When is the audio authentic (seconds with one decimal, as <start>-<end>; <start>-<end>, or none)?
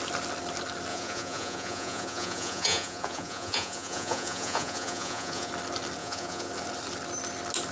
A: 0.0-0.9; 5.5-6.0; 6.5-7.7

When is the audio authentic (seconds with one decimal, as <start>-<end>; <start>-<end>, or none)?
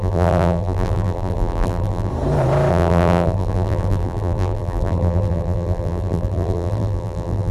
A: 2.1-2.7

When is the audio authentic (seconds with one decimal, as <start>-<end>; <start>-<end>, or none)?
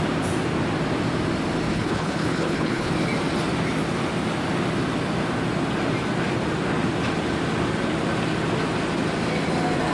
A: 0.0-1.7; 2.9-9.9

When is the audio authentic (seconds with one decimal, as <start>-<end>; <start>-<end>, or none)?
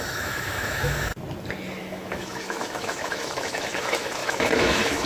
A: 1.1-1.8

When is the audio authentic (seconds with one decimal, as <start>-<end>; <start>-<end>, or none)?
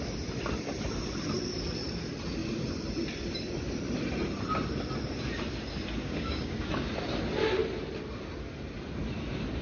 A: 0.0-6.0; 6.7-9.6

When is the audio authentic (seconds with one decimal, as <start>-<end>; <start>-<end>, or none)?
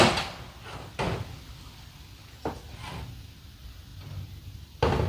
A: 0.0-5.1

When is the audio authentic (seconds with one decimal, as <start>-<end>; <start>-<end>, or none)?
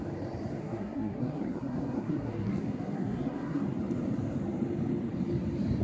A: 0.0-0.6; 3.6-5.8